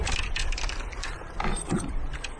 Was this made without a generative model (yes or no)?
yes